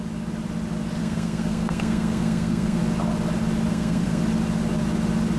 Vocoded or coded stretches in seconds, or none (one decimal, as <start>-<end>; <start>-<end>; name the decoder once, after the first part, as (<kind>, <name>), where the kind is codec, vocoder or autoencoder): 1.0-2.8 (codec, SNAC); 3.7-4.2